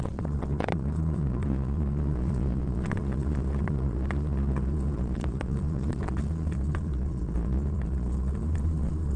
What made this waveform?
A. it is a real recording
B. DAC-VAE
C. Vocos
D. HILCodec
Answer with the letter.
C